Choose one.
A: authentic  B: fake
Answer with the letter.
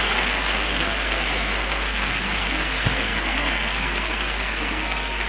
B